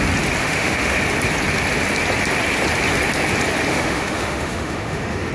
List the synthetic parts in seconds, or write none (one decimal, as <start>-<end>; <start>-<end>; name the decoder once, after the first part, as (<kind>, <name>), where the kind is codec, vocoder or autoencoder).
0.4-1.0 (autoencoder, DAC-VAE); 3.7-5.3